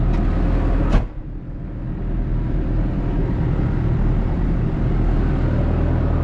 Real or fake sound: real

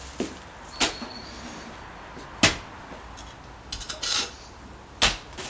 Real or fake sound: real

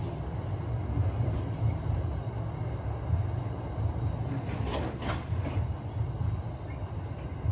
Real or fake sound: real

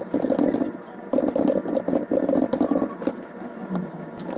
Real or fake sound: real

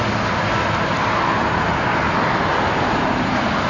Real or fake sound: real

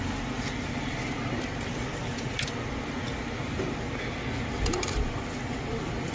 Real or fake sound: real